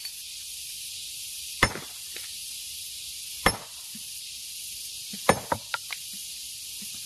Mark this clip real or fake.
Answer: fake